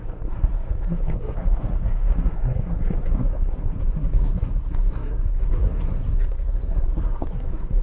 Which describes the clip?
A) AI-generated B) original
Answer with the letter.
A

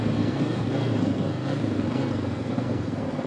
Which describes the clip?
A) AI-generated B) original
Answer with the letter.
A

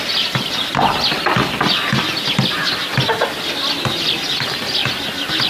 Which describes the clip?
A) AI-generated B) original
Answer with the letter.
B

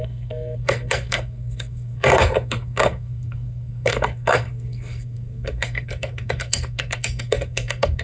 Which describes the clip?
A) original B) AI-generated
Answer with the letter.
B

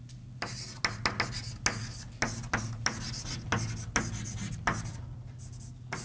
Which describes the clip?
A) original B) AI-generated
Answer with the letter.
A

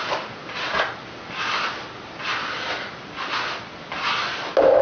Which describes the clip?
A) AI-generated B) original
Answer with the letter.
B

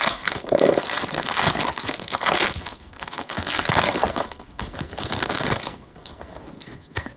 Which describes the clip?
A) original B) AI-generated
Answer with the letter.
B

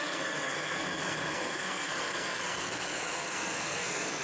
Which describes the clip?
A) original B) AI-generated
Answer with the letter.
B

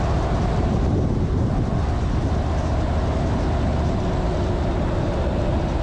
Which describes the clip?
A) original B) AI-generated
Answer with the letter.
A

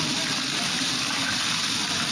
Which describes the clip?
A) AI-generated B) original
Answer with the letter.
B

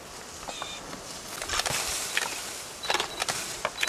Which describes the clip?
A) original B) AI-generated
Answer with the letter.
A